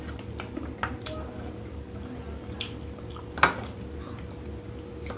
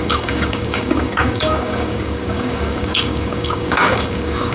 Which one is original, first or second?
first